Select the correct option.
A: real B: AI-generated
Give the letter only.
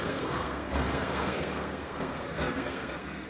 B